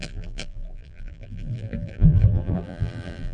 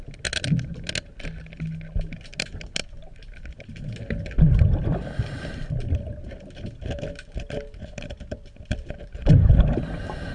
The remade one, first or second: first